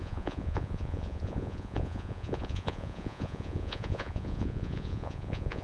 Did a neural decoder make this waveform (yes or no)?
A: yes